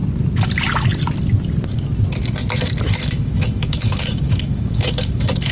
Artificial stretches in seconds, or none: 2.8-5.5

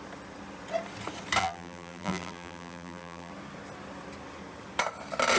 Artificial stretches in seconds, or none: 1.4-3.3

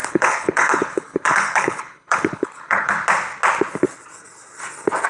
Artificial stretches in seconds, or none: 0.0-2.9

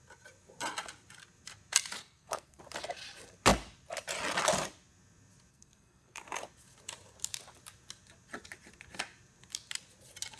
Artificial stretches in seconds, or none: 2.0-2.6; 5.5-6.2

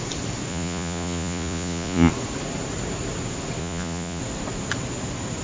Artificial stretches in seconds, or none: 0.5-2.1; 3.6-4.2

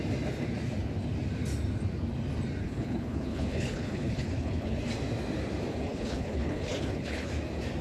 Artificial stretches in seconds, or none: 2.6-4.8; 5.7-7.3